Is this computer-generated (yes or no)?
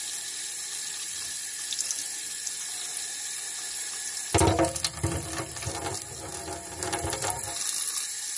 no